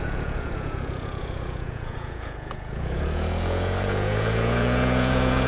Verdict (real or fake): fake